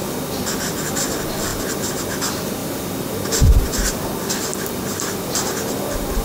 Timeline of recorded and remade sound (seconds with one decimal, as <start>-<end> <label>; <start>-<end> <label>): 0.0-2.6 recorded; 2.6-4.1 remade; 4.1-4.5 recorded; 4.5-5.7 remade; 5.7-6.2 recorded